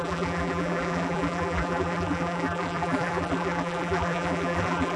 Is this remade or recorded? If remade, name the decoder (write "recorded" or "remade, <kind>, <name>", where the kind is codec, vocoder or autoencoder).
remade, vocoder, BigVGAN v2